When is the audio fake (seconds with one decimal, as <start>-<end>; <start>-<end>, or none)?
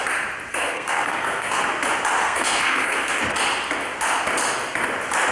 0.5-1.6; 2.2-3.2